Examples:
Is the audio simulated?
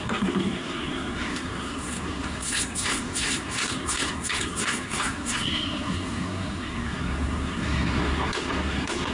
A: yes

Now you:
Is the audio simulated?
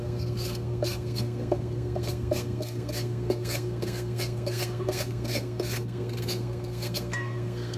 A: yes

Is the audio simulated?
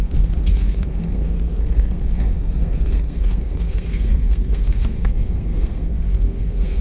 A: yes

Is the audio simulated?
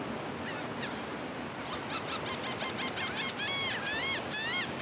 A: no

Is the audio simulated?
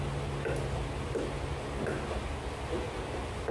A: no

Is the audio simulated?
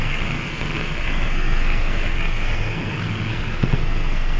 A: yes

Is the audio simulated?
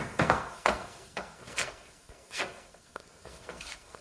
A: yes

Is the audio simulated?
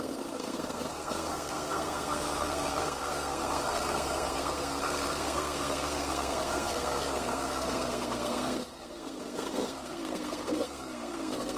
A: yes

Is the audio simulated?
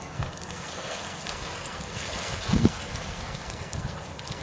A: yes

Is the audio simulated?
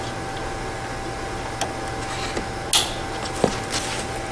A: no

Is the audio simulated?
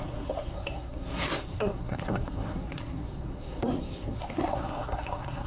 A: yes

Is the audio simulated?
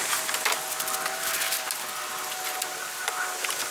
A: no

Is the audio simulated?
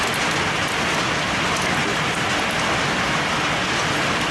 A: no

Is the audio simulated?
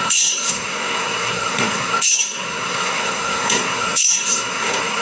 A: yes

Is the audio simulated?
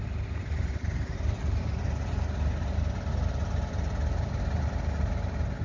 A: no